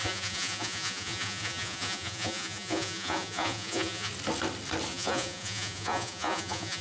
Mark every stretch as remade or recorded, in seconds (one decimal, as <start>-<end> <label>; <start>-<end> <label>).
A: 0.0-4.1 remade; 4.1-4.9 recorded; 4.9-6.8 remade